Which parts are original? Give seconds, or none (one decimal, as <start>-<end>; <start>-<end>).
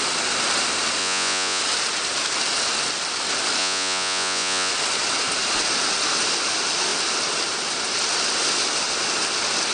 0.0-1.0; 1.6-3.6; 4.7-9.7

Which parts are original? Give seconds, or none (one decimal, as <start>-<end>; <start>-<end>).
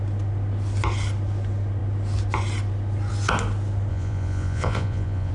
0.0-3.9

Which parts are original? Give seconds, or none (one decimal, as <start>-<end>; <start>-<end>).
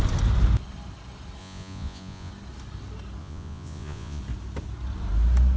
0.0-1.4; 2.3-3.2; 4.2-5.6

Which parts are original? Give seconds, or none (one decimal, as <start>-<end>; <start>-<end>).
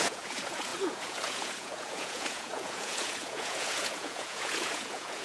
none